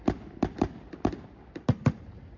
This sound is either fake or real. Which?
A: real